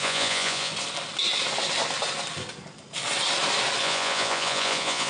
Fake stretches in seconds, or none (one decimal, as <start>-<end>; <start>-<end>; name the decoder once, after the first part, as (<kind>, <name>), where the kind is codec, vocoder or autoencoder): 0.0-0.7 (vocoder, Vocos); 3.8-5.1